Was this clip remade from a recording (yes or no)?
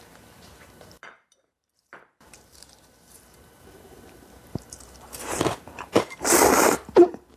yes